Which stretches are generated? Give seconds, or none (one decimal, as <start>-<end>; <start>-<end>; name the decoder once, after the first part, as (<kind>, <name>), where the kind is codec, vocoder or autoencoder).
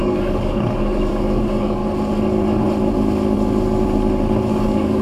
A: 0.0-1.8 (codec, DAC); 4.5-5.0